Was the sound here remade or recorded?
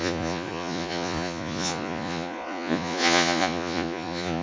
remade